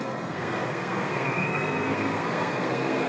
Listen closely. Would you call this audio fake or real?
fake